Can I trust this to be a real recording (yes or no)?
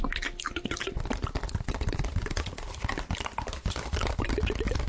yes